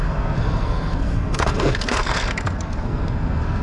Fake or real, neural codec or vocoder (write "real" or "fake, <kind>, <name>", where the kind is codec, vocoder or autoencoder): fake, codec, SNAC